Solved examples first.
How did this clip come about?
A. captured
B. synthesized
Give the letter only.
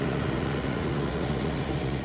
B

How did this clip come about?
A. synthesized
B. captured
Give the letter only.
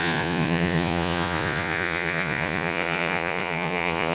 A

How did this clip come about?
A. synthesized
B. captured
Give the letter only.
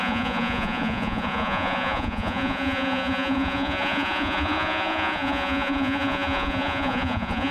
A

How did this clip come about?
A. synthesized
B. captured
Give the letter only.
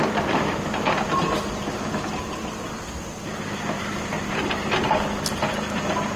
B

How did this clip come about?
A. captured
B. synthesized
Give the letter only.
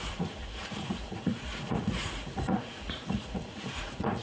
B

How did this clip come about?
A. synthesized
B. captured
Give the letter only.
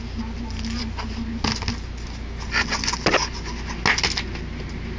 B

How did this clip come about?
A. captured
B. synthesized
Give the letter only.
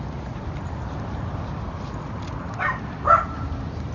A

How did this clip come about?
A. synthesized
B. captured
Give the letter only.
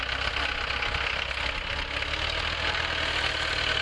B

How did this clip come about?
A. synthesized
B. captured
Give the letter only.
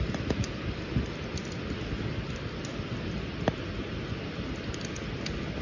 B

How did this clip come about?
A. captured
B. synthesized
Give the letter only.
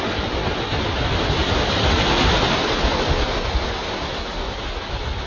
A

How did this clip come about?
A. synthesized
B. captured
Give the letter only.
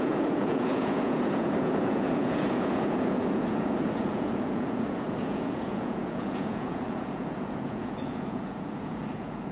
A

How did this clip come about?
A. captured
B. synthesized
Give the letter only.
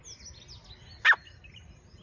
A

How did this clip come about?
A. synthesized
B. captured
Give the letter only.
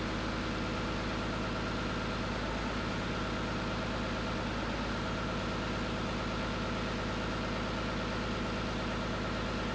B